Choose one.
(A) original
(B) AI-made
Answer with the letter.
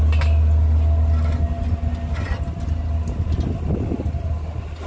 A